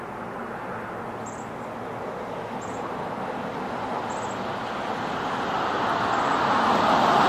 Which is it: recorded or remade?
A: recorded